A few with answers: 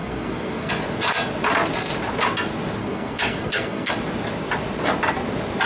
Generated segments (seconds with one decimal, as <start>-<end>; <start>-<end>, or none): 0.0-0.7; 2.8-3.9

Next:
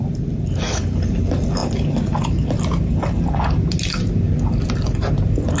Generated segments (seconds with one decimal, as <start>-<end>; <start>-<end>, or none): none

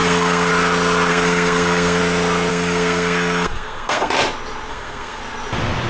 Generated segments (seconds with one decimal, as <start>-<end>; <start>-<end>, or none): 0.0-0.5; 1.1-2.0; 2.5-4.1; 4.7-5.2